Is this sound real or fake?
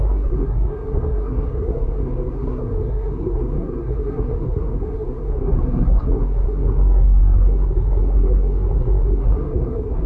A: fake